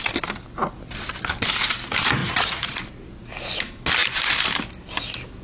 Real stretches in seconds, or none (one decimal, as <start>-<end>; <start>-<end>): 0.0-2.2; 2.8-5.4